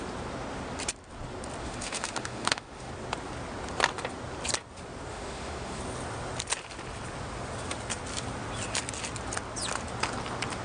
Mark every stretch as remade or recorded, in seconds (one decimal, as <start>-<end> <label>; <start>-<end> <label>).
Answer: 0.0-1.6 recorded; 1.6-2.9 remade; 2.9-5.1 recorded; 5.1-5.8 remade; 5.8-10.6 recorded